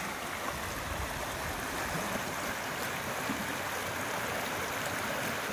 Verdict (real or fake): real